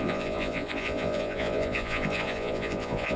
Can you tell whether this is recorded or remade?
remade